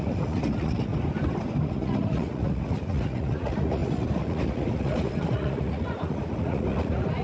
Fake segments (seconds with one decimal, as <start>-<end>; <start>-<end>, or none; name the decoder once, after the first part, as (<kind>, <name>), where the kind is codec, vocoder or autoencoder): 0.0-0.9 (vocoder, Vocos); 1.6-7.2